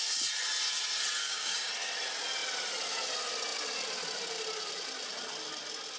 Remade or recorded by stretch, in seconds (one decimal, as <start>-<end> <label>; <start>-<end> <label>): 0.0-1.2 recorded; 1.2-1.7 remade; 1.7-6.0 recorded